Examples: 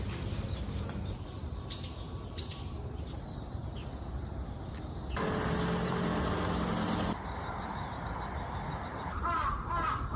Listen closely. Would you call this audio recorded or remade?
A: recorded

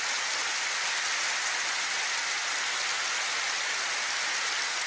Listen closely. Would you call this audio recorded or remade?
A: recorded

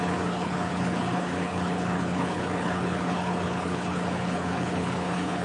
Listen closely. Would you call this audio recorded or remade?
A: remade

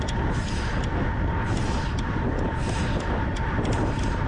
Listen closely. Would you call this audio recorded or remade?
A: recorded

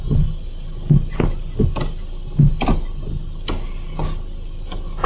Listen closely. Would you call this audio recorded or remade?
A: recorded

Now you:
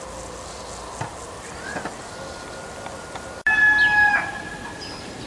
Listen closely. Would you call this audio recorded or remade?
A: recorded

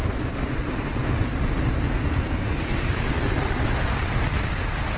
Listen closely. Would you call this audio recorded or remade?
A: recorded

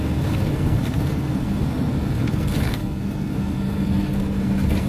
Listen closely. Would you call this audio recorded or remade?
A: remade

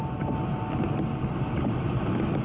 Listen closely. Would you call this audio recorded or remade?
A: recorded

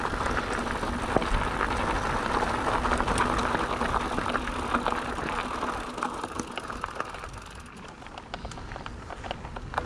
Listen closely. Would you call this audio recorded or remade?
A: recorded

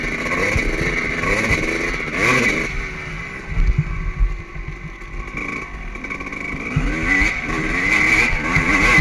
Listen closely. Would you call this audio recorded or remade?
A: recorded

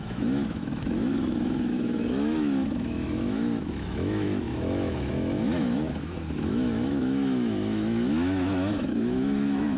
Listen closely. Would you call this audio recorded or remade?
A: remade